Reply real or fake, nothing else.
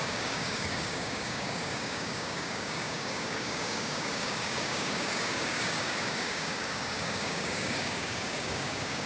fake